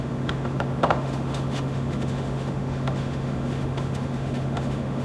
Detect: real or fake fake